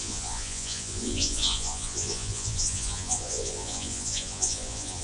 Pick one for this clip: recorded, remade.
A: remade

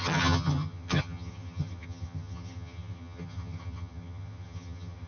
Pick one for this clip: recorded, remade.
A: remade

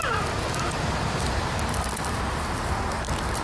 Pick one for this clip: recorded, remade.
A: recorded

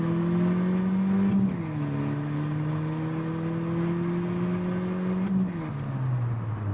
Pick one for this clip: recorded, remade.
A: recorded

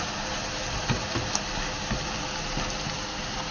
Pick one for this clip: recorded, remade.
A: recorded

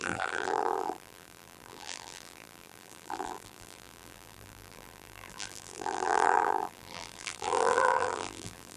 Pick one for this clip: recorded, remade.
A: remade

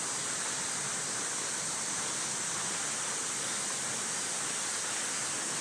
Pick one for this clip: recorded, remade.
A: recorded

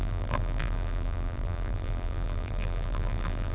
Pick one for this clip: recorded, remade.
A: remade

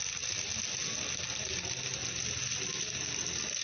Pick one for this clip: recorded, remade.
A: recorded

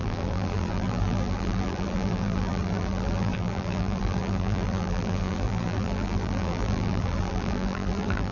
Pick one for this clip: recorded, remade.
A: remade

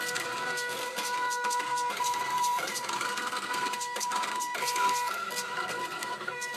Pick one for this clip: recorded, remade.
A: remade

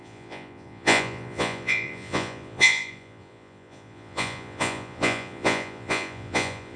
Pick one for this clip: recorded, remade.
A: remade